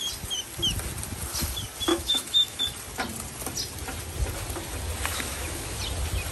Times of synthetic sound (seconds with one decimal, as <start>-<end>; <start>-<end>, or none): 1.9-2.6; 5.1-5.8

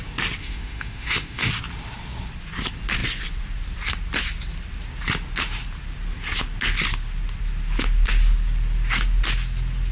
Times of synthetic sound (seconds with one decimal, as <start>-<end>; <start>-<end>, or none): 0.4-1.5

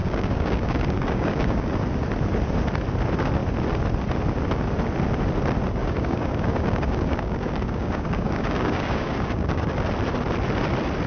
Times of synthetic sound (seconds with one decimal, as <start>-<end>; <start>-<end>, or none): 0.0-1.7; 5.8-9.7

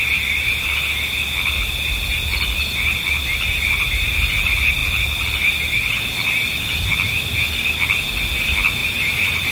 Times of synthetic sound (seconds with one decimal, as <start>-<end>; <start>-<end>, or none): 8.8-9.5

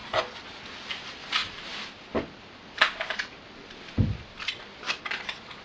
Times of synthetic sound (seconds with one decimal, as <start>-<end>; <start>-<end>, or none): 0.9-5.6

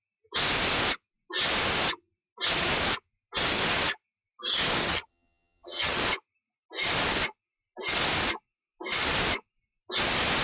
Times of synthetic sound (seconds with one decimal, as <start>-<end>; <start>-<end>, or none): 4.8-6.0

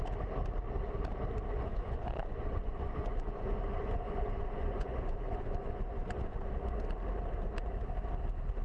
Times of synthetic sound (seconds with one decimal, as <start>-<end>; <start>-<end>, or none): 1.7-6.5

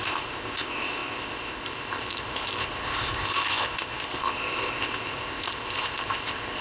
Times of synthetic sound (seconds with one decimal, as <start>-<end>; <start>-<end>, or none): 0.0-6.6